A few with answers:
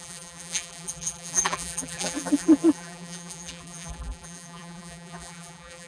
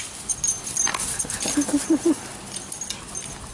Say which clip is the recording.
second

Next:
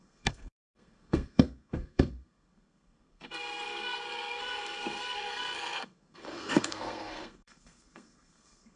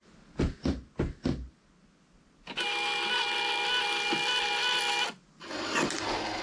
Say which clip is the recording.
second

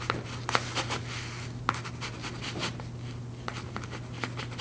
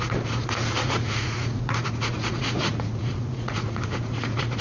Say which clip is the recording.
first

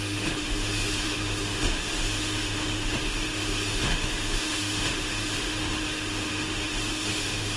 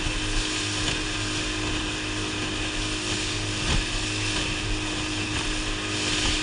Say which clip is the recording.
second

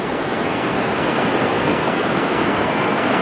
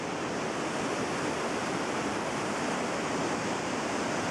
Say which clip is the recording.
second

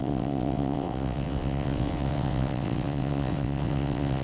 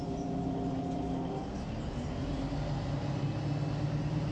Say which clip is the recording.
second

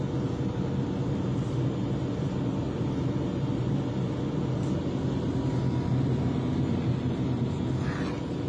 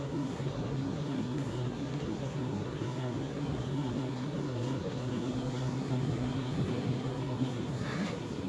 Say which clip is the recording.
first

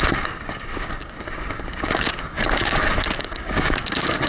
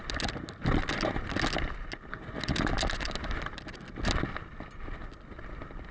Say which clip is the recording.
second